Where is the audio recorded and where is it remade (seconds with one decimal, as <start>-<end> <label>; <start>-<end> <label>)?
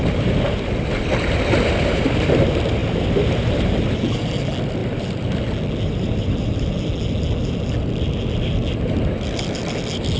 0.0-2.8 recorded; 2.8-3.4 remade; 3.4-4.8 recorded; 4.8-5.4 remade; 5.4-10.2 recorded